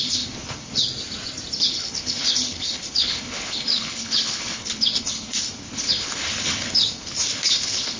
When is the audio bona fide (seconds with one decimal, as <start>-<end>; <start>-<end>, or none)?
0.8-1.6